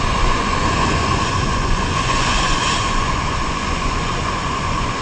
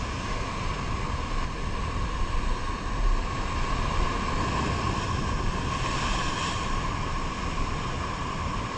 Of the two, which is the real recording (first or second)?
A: second